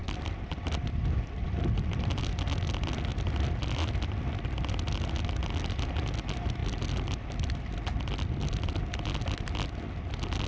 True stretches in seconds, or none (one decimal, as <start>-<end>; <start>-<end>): 2.2-3.1; 3.9-6.6; 8.8-10.5